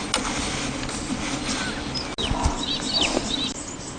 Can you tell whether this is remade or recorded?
recorded